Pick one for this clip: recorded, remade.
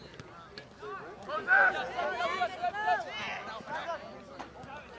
recorded